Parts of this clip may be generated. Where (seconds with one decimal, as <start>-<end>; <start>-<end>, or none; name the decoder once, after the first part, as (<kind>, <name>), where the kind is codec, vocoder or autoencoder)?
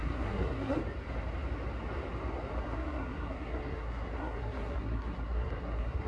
0.0-0.8 (codec, SNAC); 2.6-6.1